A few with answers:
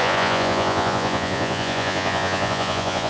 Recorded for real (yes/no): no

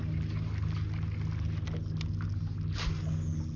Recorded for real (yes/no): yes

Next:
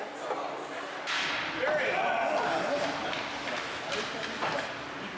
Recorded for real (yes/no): yes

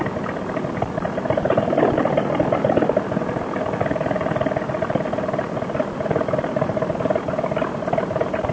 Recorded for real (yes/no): yes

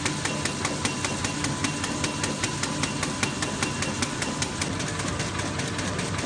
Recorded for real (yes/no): yes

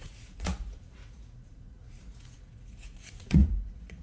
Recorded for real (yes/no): no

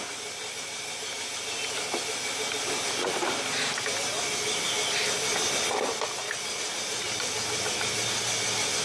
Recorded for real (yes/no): yes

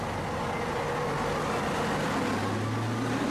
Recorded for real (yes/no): yes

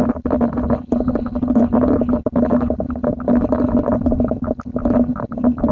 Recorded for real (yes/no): yes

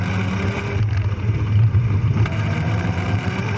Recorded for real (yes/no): yes